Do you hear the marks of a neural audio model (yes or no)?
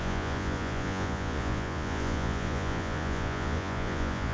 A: yes